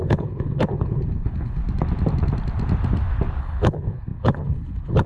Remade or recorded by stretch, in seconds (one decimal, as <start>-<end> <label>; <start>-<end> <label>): 0.0-1.6 remade; 1.6-3.4 recorded; 3.4-5.1 remade